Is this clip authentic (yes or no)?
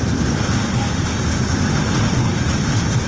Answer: yes